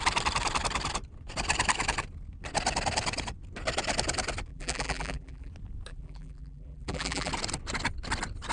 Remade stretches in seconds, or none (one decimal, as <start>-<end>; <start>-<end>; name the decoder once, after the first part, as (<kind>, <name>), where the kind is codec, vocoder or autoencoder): 4.5-5.5 (vocoder, BigVGAN v2); 5.9-7.3